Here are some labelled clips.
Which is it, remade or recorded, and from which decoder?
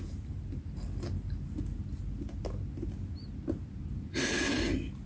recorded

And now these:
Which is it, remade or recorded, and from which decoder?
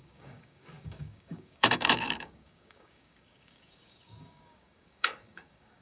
remade, codec, DAC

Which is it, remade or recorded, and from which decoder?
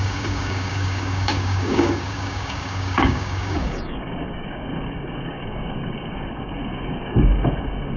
remade, codec, DAC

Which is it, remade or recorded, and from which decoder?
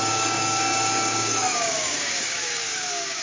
remade, codec, DAC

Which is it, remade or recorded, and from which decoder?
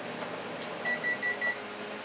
recorded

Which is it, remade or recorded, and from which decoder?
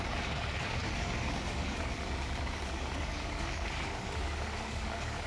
remade, codec, DAC